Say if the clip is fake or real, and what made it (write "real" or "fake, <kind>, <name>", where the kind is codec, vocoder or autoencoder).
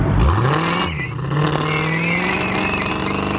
real